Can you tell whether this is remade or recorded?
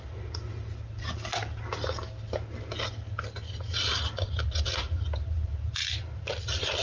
remade